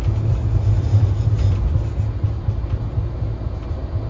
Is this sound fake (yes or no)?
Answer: no